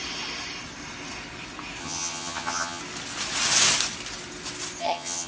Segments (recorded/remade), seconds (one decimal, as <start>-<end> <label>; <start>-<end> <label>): 0.0-1.8 recorded; 1.8-2.8 remade; 2.8-4.8 recorded; 4.8-5.3 remade